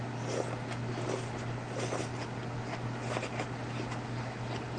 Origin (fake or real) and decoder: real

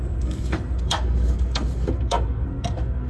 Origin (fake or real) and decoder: fake, codec, SNAC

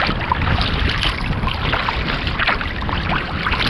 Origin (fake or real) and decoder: real